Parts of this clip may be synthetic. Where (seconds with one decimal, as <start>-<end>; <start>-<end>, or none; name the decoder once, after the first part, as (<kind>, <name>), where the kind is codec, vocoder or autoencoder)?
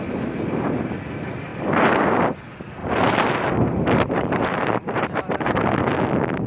2.8-5.6 (vocoder, BigVGAN v2)